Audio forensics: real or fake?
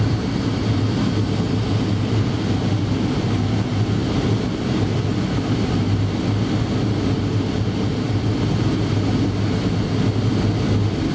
real